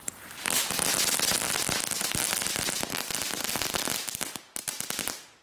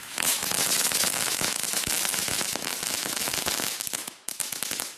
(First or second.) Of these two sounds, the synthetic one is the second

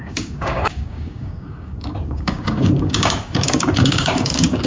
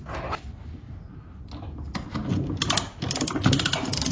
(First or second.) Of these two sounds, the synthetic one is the first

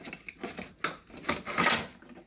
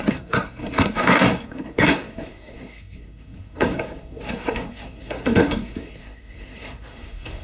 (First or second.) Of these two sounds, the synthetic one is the second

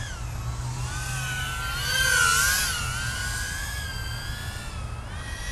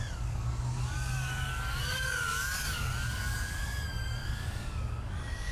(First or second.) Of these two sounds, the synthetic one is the second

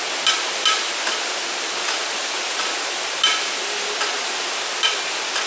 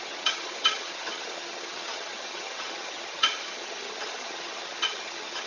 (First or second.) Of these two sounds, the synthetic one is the second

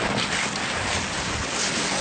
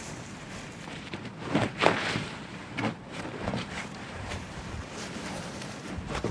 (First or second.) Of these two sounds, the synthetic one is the second